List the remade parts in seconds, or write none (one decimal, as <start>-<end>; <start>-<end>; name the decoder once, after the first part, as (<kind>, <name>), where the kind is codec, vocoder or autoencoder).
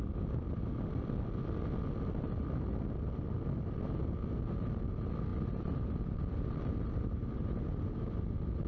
5.3-8.7 (vocoder, BigVGAN v2)